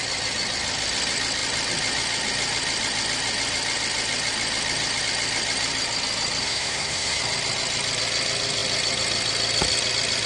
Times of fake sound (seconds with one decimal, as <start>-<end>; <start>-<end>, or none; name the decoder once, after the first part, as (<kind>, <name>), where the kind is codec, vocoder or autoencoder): 6.4-7.2 (codec, SNAC)